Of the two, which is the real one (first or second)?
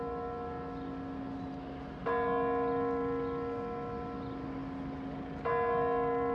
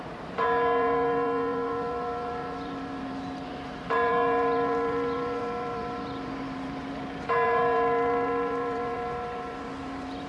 first